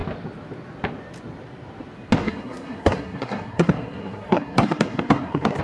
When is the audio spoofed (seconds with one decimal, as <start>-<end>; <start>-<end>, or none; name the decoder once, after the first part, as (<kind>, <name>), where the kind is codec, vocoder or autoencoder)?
2.2-5.6 (codec, SNAC)